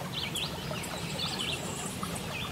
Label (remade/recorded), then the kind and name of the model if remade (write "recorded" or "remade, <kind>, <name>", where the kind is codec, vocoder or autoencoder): recorded